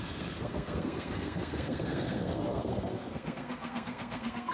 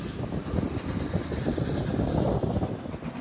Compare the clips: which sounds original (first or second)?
second